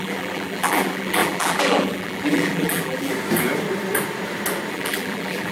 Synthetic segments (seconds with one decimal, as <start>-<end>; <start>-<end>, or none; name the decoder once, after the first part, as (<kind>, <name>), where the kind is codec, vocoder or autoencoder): 0.0-3.1 (vocoder, BigVGAN v2); 4.7-5.5

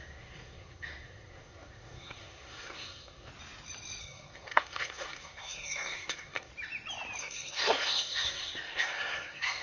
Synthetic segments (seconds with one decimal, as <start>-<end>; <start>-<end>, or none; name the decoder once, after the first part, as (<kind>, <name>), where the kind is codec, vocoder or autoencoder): 0.0-3.3 (codec, SNAC); 4.0-6.5; 7.2-9.6